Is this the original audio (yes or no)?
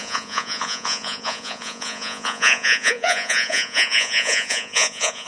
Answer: no